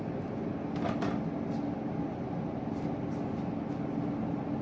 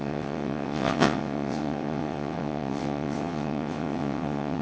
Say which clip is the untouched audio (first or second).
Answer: first